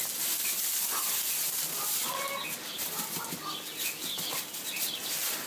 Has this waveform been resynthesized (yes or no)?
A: no